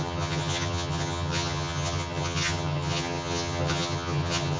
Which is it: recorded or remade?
remade